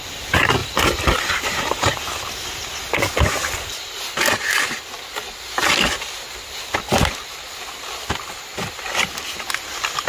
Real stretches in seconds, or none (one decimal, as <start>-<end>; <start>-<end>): 0.0-10.1